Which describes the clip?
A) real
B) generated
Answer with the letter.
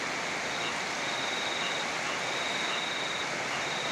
A